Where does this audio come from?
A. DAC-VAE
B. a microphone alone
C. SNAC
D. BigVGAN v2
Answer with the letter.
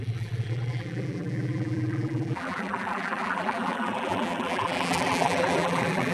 D